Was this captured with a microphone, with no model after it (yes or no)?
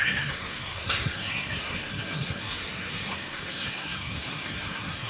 no